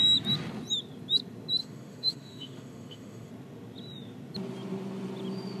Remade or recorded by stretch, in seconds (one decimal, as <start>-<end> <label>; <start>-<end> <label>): 0.0-1.6 recorded; 1.6-3.3 remade; 3.3-5.6 recorded

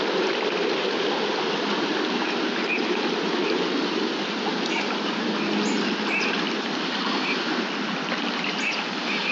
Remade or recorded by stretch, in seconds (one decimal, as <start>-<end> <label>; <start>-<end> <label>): 0.0-9.3 recorded

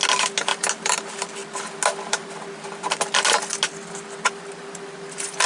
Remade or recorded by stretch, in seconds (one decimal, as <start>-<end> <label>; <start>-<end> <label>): 0.0-5.5 recorded

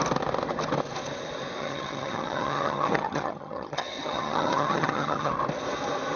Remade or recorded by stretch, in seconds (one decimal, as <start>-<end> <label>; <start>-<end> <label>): 0.0-1.6 recorded; 1.6-5.3 remade; 5.3-6.2 recorded

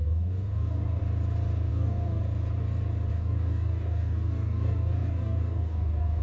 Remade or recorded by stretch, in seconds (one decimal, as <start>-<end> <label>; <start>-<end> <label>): 0.0-1.0 remade; 1.0-1.7 recorded; 1.7-2.2 remade; 2.2-3.1 recorded; 3.1-6.2 remade

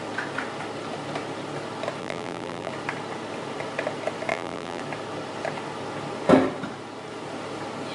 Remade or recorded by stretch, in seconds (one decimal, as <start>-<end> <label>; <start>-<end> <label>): 0.0-2.0 recorded; 2.0-2.7 remade; 2.7-4.3 recorded; 4.3-4.8 remade; 4.8-7.9 recorded

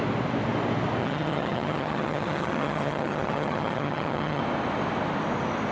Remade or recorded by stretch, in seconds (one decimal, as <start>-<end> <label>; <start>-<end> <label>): 0.0-1.0 recorded; 1.0-4.4 remade; 4.4-5.7 recorded

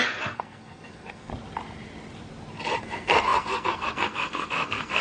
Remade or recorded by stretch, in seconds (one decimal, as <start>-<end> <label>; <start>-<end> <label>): 0.0-1.3 remade; 1.3-2.8 recorded; 2.8-5.0 remade